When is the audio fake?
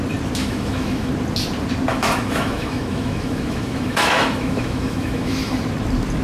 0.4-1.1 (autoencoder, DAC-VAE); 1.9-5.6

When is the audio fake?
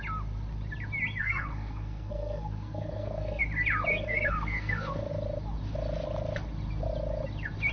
1.2-3.4 (codec, SNAC); 3.9-5.1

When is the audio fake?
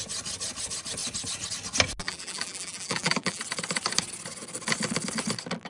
2.0-3.4 (vocoder, BigVGAN v2)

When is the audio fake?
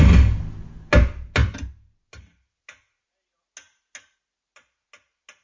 none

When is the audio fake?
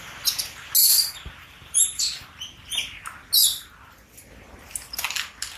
0.8-2.3 (vocoder, BigVGAN v2)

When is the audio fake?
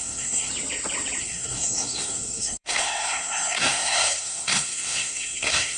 0.0-0.5 (codec, SNAC); 1.2-5.8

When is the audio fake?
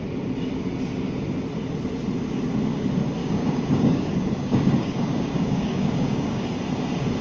3.2-6.4 (codec, DAC)